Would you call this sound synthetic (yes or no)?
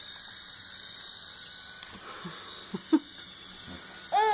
no